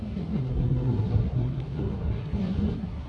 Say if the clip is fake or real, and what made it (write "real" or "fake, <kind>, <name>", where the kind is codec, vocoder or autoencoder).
fake, codec, SNAC